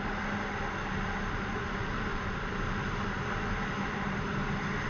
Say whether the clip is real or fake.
real